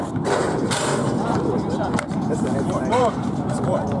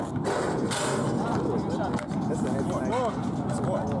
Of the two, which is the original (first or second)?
second